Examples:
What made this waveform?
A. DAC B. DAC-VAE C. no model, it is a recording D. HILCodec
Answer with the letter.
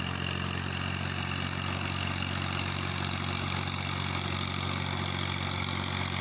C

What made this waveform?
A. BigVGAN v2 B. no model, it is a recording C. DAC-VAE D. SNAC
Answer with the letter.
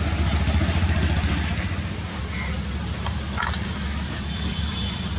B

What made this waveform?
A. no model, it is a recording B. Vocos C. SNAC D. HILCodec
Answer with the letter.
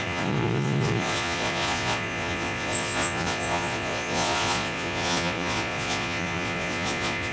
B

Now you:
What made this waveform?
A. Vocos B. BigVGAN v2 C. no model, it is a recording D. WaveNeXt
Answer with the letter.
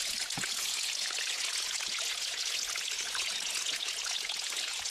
A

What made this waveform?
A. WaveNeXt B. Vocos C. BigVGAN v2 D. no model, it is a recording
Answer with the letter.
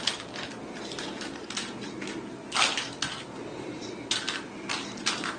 D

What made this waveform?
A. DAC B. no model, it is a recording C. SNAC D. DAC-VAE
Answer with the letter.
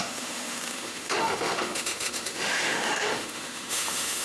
D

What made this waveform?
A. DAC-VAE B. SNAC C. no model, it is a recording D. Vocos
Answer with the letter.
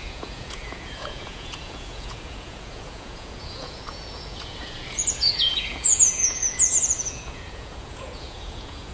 D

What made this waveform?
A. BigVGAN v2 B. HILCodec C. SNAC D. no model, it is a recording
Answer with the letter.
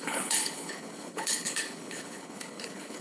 B